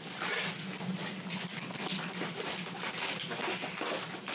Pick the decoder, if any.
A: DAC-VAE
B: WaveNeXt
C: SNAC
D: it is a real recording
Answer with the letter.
D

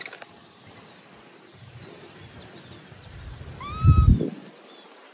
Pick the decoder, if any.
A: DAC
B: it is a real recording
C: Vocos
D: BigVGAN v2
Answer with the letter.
B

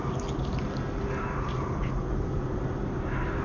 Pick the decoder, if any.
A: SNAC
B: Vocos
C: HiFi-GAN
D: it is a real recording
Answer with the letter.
D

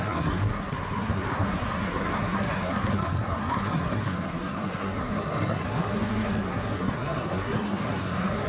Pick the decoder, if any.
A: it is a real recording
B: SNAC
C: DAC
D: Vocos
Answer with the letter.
B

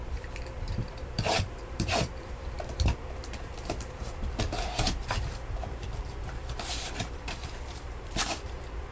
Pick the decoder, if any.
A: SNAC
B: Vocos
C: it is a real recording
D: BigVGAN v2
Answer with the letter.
D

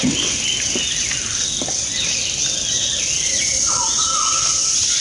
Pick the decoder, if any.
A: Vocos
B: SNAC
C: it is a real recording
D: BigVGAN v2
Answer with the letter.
C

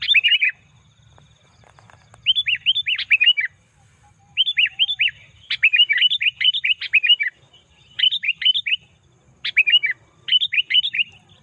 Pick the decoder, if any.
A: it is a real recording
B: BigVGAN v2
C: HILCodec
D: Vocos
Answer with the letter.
A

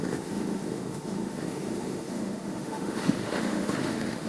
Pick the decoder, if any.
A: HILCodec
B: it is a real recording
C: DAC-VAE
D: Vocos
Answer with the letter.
C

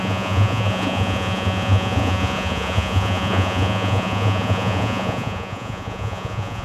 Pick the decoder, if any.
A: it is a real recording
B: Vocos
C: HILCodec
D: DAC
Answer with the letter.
B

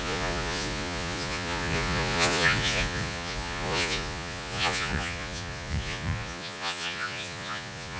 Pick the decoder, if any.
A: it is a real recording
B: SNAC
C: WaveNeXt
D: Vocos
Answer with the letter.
D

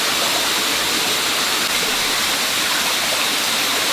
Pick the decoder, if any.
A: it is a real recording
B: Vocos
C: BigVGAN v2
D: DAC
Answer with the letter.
A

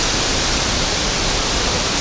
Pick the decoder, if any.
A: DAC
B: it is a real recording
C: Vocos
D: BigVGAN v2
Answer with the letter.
D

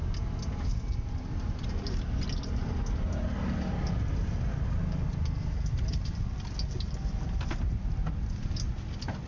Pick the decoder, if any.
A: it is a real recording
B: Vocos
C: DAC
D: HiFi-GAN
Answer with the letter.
A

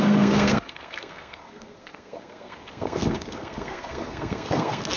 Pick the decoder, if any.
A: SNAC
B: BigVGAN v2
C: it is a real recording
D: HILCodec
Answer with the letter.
A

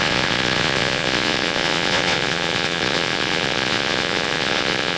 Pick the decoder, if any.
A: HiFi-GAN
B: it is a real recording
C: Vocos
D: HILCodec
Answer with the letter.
C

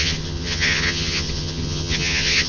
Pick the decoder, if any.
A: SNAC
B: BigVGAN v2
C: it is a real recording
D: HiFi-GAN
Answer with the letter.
D